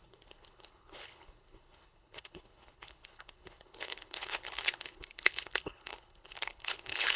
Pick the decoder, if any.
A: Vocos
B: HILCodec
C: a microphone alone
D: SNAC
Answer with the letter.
B